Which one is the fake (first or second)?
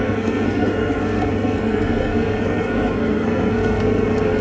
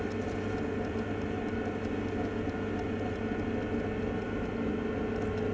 first